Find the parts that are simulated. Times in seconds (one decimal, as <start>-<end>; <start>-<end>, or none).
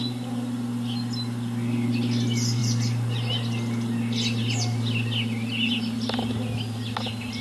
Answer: none